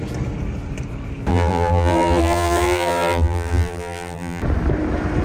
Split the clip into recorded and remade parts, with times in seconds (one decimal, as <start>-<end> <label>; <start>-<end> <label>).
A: 0.0-1.3 recorded; 1.3-4.4 remade; 4.4-5.2 recorded